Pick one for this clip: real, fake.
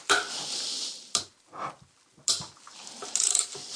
real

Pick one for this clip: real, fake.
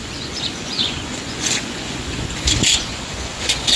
fake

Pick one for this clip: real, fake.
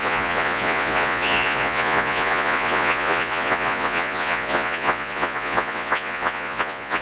fake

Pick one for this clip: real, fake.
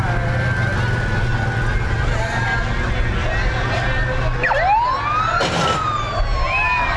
real